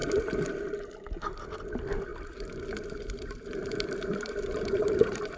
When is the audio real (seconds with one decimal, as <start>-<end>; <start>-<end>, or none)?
0.9-2.1